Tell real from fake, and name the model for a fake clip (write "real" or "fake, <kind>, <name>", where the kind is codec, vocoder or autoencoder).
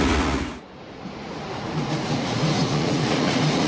fake, vocoder, Vocos